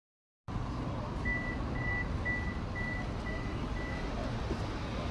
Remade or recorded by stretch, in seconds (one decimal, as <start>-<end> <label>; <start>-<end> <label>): 0.0-5.1 recorded